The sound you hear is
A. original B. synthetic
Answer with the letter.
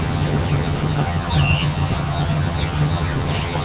B